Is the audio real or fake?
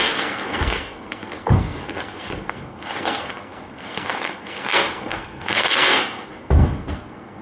fake